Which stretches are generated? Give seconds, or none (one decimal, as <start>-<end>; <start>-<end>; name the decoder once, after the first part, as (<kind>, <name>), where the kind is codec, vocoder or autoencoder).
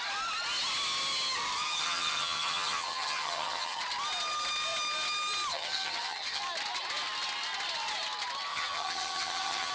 1.6-3.8 (vocoder, HiFi-GAN); 5.5-6.4; 8.5-9.7